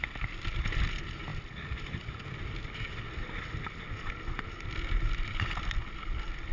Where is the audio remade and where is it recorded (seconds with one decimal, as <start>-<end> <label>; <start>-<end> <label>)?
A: 0.0-6.5 recorded